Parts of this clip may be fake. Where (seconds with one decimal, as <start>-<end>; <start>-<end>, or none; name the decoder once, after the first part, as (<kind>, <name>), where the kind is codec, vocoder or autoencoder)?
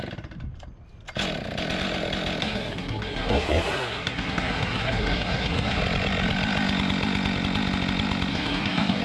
2.4-5.8 (codec, SNAC); 8.3-9.0